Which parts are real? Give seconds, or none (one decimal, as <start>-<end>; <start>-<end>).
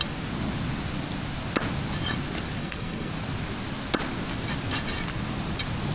0.0-2.6; 3.1-5.9